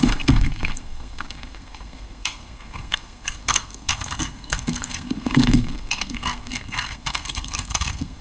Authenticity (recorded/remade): remade